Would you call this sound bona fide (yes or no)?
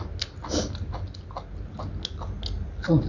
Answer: yes